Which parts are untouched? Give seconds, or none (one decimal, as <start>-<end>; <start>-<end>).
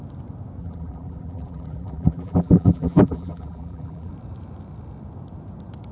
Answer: 0.0-0.6; 4.1-5.9